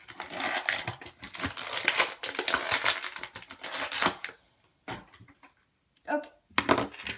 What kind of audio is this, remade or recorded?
recorded